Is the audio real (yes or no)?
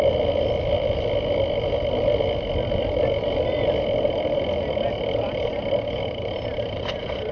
yes